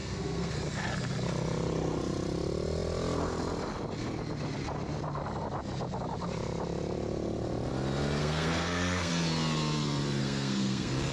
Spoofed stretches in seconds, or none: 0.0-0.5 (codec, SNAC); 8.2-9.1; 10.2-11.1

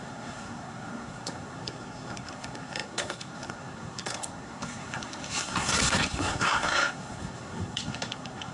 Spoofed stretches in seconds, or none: 0.0-8.5 (codec, SNAC)

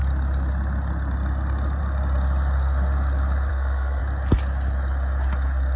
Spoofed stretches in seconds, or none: 3.5-4.0 (codec, SNAC)